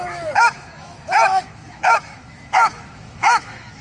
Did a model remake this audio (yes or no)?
yes